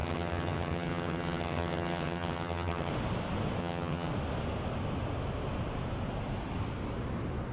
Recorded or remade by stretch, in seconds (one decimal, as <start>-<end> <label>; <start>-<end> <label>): 0.0-2.9 remade; 2.9-3.6 recorded; 3.6-4.1 remade; 4.1-7.5 recorded